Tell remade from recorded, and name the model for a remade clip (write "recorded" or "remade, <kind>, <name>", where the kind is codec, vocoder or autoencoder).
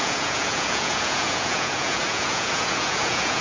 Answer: remade, vocoder, Vocos